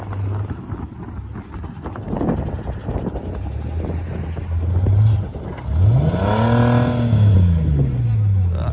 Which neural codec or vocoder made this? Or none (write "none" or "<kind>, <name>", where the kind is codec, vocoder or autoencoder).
none